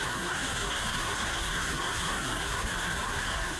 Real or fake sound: fake